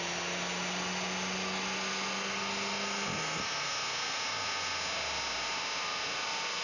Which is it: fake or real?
real